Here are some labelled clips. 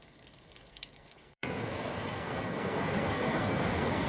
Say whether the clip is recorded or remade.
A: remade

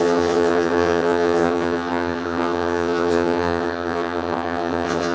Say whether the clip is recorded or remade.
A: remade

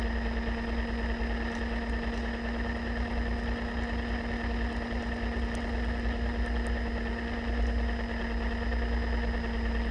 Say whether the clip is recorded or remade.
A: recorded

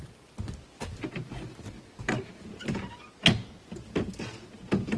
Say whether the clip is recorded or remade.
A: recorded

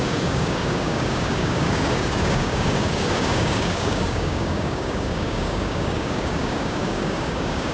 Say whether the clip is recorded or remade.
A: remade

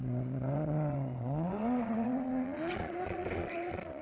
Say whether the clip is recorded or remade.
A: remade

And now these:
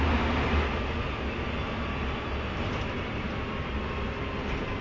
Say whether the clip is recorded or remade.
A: recorded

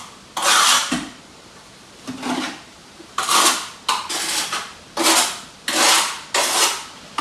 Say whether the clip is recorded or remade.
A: recorded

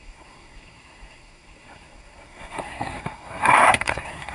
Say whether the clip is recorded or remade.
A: remade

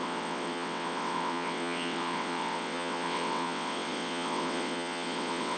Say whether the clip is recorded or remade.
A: remade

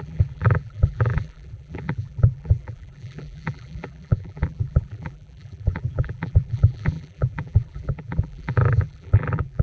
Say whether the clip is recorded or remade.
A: remade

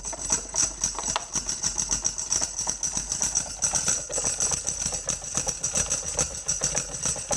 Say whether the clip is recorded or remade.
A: recorded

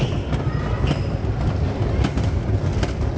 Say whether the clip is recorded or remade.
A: recorded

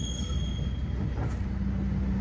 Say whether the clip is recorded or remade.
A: recorded